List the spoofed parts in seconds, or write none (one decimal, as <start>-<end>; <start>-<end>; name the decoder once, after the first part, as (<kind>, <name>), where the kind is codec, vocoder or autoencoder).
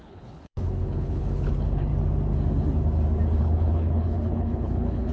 0.0-1.9 (codec, HILCodec); 3.4-5.1